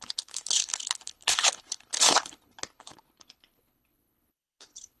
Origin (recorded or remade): remade